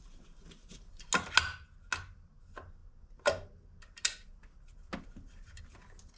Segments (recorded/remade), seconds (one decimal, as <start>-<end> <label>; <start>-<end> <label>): 0.0-6.2 recorded